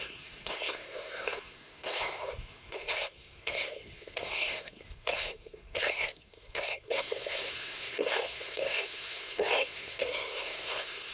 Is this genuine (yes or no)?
no